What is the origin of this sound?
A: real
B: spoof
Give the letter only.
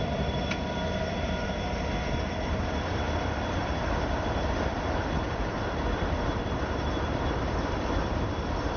B